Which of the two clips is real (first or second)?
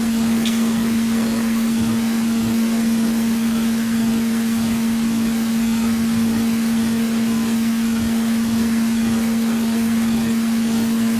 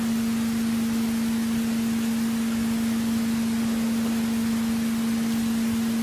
second